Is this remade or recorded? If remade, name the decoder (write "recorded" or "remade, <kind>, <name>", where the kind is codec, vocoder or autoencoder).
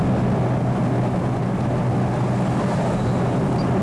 recorded